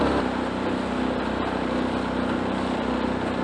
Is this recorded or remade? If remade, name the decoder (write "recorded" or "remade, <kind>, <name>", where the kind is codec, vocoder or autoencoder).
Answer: recorded